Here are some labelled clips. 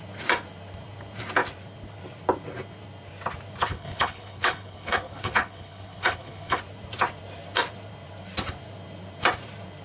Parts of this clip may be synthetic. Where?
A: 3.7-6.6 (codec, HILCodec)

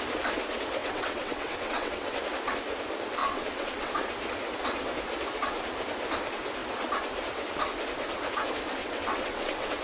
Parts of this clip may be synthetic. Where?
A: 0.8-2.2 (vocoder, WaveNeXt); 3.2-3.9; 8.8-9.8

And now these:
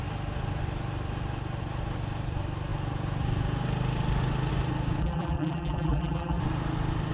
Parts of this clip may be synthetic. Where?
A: 5.0-6.4 (vocoder, BigVGAN v2)

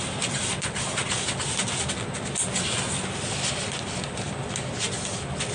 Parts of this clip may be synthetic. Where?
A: 0.4-1.0 (vocoder, BigVGAN v2)

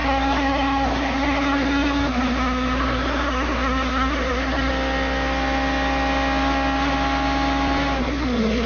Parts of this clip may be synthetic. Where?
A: 0.0-4.7 (codec, SNAC); 8.0-8.7

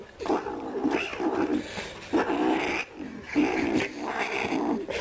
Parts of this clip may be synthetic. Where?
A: none

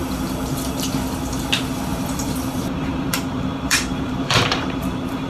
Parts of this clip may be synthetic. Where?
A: 1.9-5.3 (vocoder, BigVGAN v2)

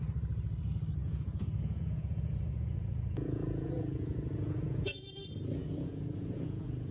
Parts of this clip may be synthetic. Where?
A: 1.0-5.1 (vocoder, Vocos); 5.6-6.9